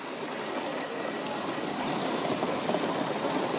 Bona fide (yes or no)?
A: yes